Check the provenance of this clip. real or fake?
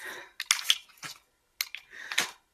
real